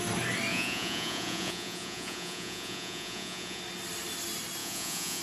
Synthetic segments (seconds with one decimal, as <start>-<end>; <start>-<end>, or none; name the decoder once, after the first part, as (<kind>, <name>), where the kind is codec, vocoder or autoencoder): 0.5-3.6 (vocoder, Vocos); 4.6-5.2